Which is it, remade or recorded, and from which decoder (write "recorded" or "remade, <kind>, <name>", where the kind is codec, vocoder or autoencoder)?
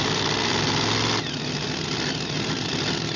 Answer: recorded